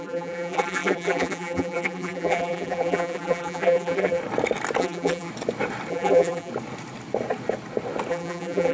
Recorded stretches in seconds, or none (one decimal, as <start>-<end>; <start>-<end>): 4.2-4.8; 5.3-5.9; 6.5-8.1